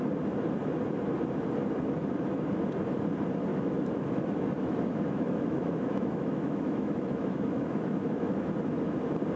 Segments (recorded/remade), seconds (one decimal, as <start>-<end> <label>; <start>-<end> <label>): 0.0-3.5 recorded; 3.5-8.5 remade; 8.5-9.4 recorded